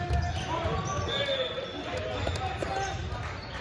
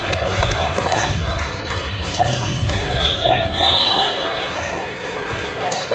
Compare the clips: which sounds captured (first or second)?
first